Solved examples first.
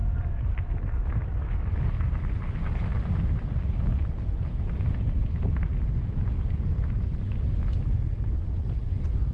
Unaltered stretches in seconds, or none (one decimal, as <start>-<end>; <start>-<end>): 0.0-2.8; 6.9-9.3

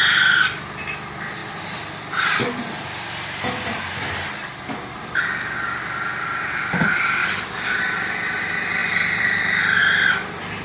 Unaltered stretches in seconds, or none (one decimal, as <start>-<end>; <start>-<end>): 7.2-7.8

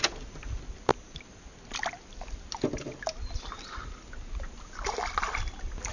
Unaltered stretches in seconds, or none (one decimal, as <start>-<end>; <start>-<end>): 0.0-5.9

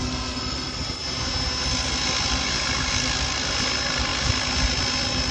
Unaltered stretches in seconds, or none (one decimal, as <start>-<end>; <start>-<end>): 0.0-5.3